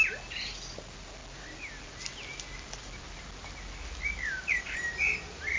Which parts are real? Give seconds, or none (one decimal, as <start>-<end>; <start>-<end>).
0.0-5.6

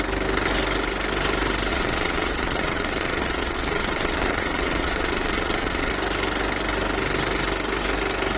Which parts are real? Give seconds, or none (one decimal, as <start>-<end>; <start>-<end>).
0.0-1.7; 5.9-8.4

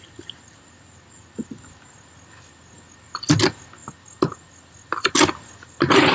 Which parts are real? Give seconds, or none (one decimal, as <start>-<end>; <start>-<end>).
0.0-6.1